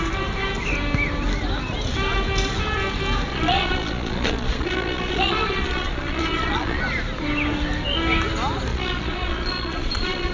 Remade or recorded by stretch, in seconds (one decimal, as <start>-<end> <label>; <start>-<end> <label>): 0.0-3.3 recorded; 3.3-6.8 remade; 6.8-8.7 recorded; 8.7-10.3 remade